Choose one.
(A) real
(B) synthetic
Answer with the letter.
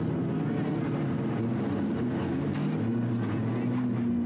A